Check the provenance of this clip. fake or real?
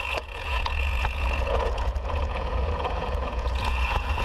fake